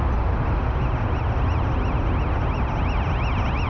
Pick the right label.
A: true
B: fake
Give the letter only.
A